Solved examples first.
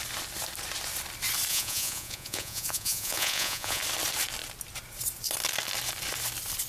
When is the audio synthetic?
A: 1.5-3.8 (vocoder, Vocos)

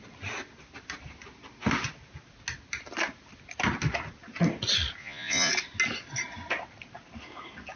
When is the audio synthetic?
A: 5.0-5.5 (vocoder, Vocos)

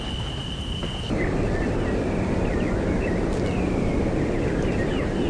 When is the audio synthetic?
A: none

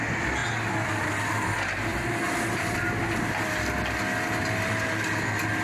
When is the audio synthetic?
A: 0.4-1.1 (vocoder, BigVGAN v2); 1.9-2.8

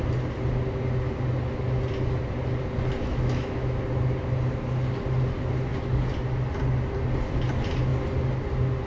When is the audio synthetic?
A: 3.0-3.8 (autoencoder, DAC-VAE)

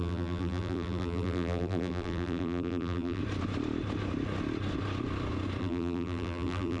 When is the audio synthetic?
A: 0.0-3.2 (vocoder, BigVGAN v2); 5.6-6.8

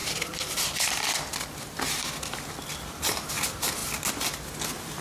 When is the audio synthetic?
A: 0.0-1.8 (vocoder, BigVGAN v2)